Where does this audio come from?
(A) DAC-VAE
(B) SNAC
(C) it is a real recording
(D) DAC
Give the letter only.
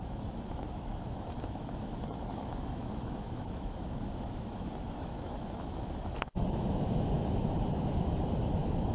A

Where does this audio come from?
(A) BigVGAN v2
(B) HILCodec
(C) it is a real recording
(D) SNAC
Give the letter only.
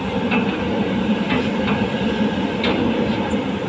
C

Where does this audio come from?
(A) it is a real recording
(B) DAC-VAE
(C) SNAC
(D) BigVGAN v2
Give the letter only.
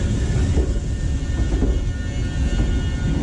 A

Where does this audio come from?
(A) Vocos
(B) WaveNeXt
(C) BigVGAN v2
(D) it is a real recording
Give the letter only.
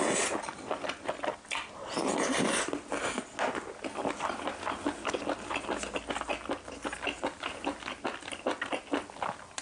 D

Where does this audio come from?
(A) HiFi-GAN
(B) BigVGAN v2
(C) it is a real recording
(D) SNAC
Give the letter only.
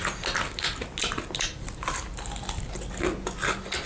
C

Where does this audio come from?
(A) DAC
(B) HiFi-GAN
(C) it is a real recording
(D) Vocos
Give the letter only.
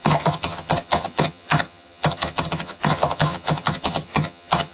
B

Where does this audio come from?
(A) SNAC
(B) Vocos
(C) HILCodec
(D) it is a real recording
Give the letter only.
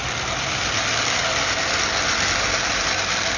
D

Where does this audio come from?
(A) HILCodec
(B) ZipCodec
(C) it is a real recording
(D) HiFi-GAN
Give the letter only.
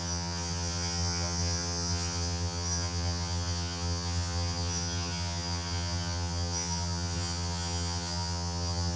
D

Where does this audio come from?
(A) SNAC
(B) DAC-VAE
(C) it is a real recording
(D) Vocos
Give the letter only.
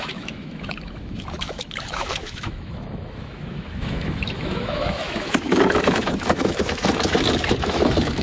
B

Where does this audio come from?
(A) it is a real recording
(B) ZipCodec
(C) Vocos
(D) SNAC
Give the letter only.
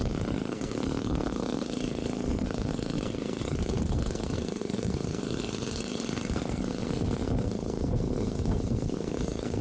D